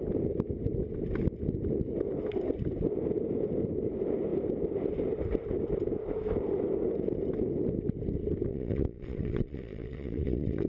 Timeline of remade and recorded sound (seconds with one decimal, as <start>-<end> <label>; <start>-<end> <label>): 0.0-8.5 recorded; 8.5-10.7 remade